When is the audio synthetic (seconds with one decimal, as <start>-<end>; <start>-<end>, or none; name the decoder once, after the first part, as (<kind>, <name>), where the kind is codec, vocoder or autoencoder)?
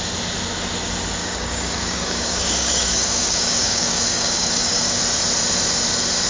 1.2-5.0 (codec, DAC)